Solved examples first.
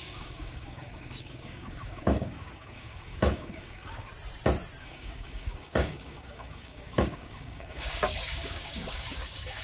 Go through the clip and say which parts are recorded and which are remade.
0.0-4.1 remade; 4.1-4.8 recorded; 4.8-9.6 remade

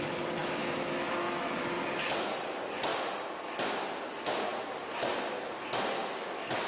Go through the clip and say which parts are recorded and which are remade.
0.0-0.4 recorded; 0.4-1.7 remade; 1.7-6.0 recorded; 6.0-6.7 remade